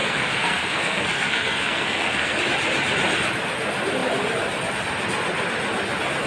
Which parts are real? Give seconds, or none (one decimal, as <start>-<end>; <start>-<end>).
2.4-6.3